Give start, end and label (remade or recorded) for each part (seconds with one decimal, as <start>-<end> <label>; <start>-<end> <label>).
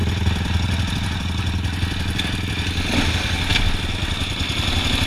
0.0-5.1 recorded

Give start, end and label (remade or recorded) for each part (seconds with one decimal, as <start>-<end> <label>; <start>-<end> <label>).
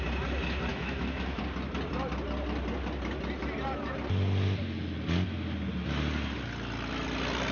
0.0-0.7 recorded; 0.7-1.4 remade; 1.4-7.5 recorded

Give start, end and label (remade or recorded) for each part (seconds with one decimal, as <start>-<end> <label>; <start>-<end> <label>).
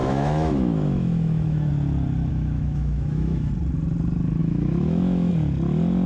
0.0-1.7 remade; 1.7-2.3 recorded; 2.3-3.5 remade; 3.5-4.4 recorded; 4.4-5.3 remade; 5.3-6.1 recorded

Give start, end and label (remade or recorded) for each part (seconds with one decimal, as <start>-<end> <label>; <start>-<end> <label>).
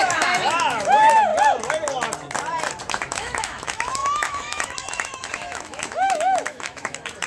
0.0-1.3 remade; 1.3-2.9 recorded; 2.9-7.3 remade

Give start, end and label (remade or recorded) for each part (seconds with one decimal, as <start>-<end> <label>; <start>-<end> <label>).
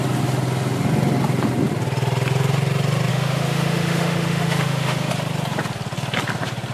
0.0-3.1 recorded; 3.1-5.1 remade; 5.1-6.7 recorded